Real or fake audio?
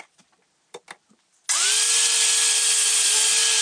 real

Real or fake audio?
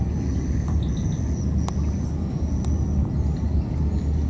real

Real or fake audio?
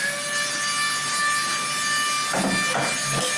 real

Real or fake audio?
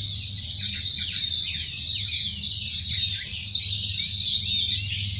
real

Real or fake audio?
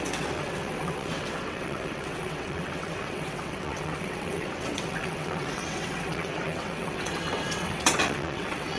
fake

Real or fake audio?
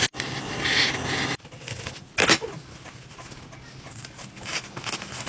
real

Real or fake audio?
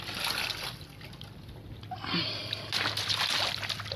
real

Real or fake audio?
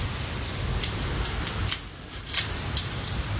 real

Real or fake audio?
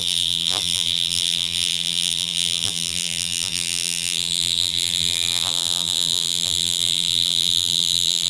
fake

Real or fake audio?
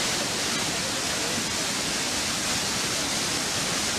real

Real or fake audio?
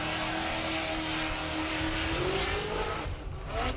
real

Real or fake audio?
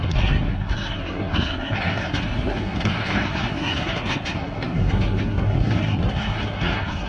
fake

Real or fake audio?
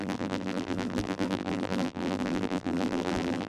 fake